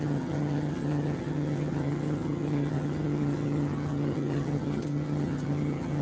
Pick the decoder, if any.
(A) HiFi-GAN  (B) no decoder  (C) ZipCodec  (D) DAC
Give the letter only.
A